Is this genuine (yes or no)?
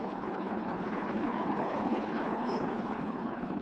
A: no